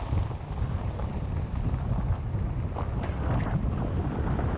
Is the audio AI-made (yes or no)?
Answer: no